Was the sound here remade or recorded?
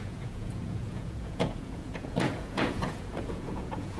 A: remade